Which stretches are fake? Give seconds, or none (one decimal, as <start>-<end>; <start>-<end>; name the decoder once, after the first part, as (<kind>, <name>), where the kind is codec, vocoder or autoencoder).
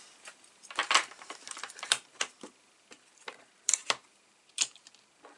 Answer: 0.0-5.4 (vocoder, BigVGAN v2)